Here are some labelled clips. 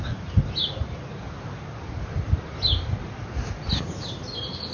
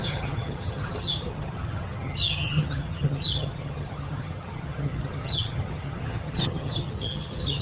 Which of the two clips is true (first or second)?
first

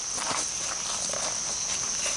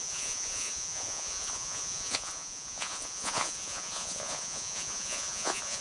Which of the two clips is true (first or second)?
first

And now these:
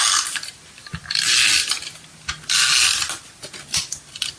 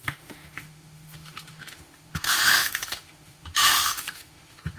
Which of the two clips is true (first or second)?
first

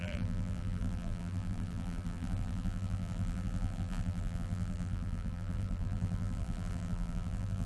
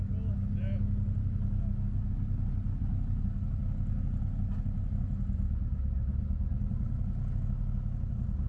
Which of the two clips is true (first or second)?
second